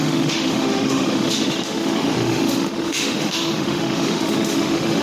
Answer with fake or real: fake